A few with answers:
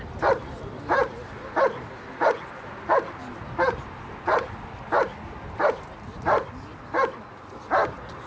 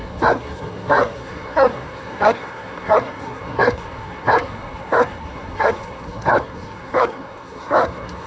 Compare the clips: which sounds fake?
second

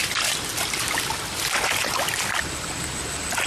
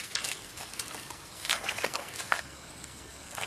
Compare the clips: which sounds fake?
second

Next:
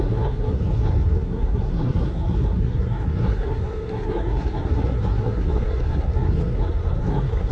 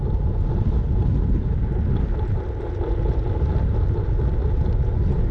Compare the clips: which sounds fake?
first